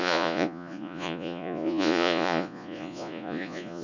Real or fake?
fake